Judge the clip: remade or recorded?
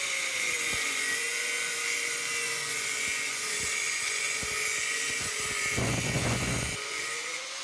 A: remade